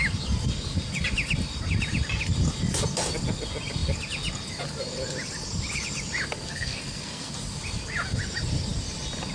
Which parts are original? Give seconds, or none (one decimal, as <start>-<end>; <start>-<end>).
0.0-6.5; 7.3-9.3